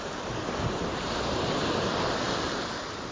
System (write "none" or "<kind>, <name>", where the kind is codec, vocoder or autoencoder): none